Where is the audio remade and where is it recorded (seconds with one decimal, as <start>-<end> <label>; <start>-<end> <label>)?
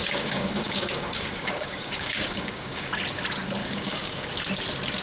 0.0-3.0 remade; 3.0-3.6 recorded; 3.6-4.3 remade; 4.3-5.0 recorded